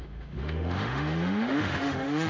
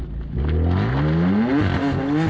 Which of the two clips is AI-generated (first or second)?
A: first